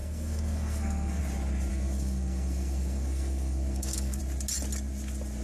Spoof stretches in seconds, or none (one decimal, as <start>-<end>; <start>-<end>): 0.0-1.2; 1.7-4.2